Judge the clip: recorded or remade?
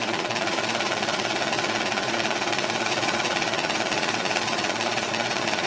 remade